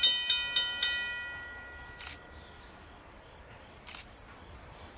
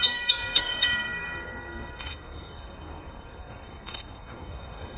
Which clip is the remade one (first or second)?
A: second